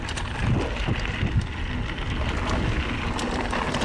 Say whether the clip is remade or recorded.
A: recorded